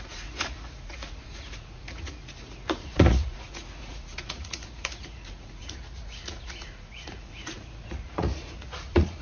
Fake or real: fake